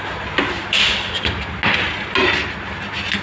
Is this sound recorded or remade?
recorded